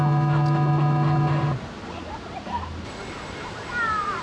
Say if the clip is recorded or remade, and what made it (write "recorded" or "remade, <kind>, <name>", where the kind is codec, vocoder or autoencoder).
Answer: recorded